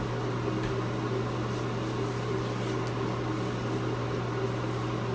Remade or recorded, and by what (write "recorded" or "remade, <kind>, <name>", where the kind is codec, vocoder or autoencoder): recorded